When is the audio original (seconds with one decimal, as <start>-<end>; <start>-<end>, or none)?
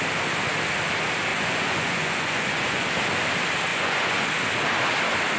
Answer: 0.0-1.3; 2.9-3.7; 4.3-5.4